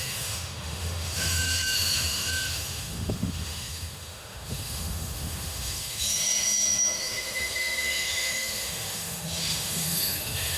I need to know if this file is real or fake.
fake